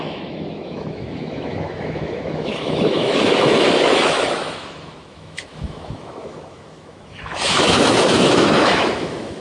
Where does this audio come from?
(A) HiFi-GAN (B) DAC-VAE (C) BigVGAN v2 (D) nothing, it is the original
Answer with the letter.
B